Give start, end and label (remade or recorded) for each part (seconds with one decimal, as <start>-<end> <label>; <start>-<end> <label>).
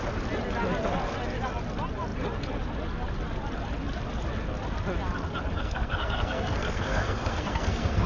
0.0-5.6 recorded; 5.6-8.1 remade